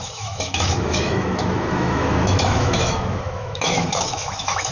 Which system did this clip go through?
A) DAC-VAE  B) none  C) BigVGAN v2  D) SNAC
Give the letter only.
A